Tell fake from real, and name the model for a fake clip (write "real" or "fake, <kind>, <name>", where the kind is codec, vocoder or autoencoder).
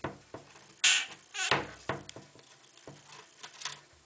real